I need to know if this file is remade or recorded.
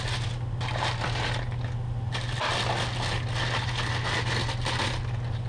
recorded